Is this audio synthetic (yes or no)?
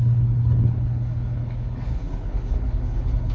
yes